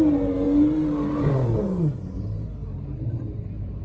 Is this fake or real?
fake